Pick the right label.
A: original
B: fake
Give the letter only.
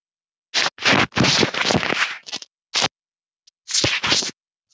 A